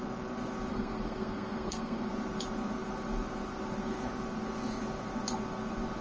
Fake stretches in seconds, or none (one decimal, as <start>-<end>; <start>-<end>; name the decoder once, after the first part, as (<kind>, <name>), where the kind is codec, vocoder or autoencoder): 0.7-2.1 (codec, SNAC)